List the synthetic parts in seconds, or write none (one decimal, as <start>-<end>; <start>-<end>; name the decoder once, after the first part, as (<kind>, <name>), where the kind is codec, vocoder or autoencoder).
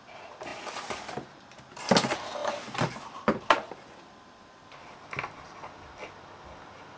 none